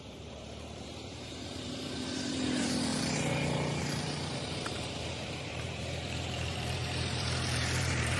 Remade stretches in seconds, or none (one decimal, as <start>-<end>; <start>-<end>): 0.0-2.9; 3.8-8.2